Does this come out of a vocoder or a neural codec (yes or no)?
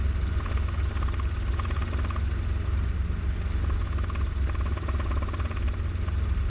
no